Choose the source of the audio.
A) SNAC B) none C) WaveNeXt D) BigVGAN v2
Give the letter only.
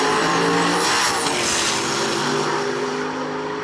B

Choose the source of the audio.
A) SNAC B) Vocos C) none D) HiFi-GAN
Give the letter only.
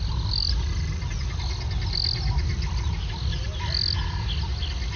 C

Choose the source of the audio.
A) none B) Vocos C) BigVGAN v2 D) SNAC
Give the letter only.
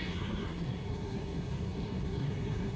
D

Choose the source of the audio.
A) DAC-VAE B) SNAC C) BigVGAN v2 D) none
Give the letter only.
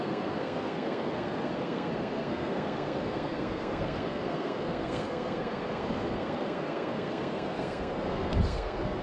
B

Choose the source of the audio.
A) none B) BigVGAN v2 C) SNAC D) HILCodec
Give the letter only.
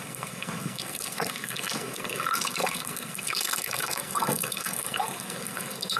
C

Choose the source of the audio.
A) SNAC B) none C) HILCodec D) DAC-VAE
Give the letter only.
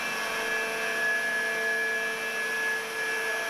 B